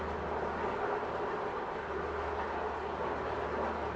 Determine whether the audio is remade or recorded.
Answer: recorded